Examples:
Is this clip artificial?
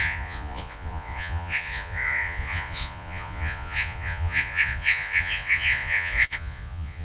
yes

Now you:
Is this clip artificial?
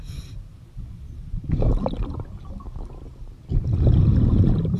no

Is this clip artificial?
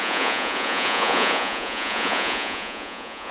yes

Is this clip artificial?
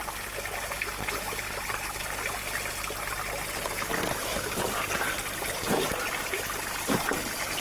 no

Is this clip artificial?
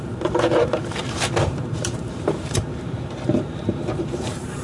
yes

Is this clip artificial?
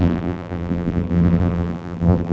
yes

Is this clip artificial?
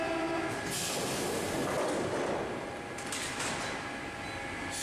no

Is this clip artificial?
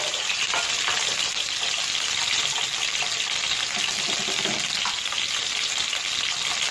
no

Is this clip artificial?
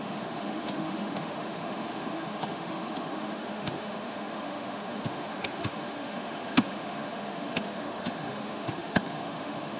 yes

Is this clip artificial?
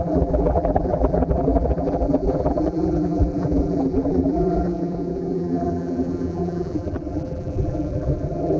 yes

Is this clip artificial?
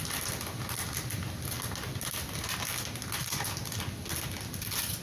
no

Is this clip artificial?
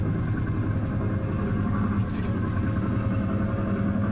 no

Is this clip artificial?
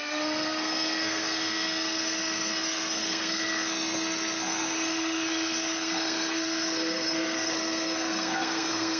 yes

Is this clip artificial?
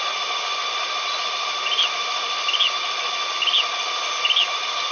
no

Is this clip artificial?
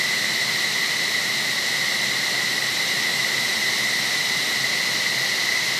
no